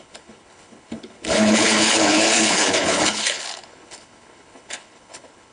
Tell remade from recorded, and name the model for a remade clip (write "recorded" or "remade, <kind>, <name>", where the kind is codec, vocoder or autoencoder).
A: remade, codec, HILCodec